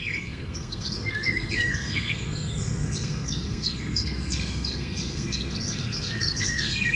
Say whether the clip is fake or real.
fake